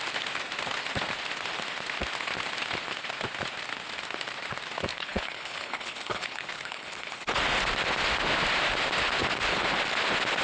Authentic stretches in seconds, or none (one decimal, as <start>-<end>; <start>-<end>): 0.0-4.9; 7.4-10.4